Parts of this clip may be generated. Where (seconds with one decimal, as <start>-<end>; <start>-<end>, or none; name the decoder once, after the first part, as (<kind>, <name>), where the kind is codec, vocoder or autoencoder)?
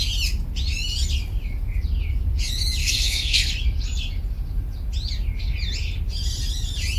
2.8-3.5 (codec, SNAC)